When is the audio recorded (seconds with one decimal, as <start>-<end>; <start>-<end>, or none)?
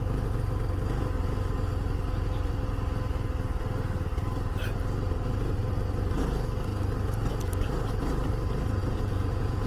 0.0-8.8